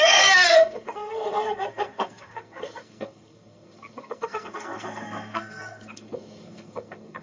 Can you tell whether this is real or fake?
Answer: fake